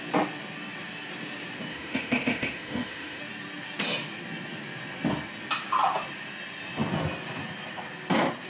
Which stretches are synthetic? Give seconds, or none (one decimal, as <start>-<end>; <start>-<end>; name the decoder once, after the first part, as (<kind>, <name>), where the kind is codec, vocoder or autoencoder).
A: 1.7-3.2 (autoencoder, DAC-VAE)